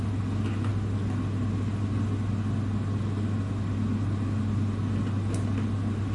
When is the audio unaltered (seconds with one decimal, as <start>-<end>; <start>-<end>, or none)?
0.0-6.1